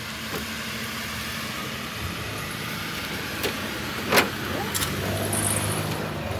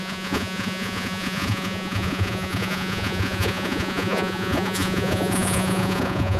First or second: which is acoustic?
first